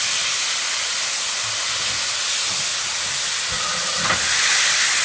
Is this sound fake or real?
real